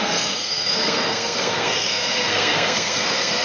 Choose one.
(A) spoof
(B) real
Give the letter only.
A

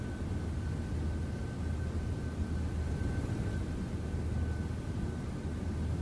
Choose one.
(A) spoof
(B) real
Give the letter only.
B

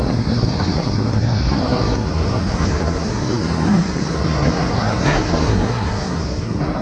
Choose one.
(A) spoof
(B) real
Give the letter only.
A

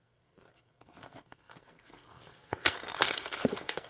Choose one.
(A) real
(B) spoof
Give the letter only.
B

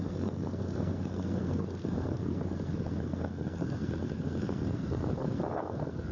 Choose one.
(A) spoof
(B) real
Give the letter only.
A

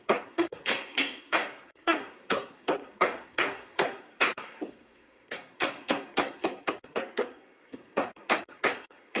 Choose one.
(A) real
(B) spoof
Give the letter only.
B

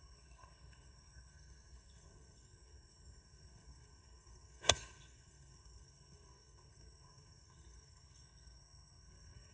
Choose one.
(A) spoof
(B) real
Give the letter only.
A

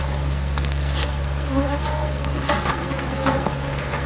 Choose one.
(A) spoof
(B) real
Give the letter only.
A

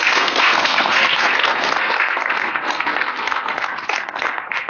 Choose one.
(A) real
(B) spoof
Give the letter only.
B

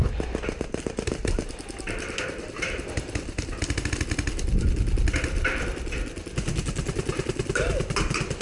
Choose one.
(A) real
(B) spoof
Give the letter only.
A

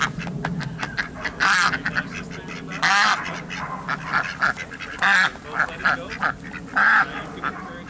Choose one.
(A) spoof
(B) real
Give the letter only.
B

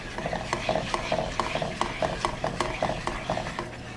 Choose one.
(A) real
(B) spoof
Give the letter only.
A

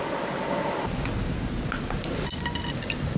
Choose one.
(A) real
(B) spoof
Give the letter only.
A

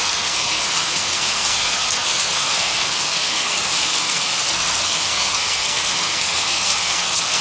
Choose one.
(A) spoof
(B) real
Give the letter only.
A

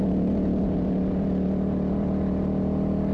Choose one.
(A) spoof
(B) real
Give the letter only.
B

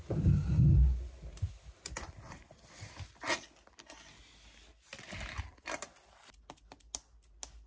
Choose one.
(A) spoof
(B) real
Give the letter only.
B